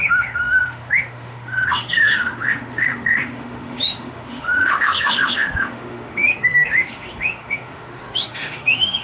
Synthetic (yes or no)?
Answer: yes